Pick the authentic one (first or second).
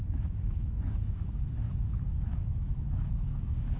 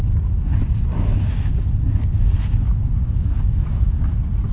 second